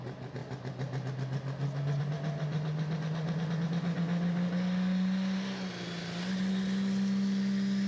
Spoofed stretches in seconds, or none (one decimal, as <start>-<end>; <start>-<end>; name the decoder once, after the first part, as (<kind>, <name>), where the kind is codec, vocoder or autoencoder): none